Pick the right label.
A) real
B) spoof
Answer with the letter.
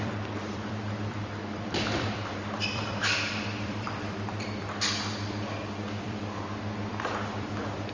B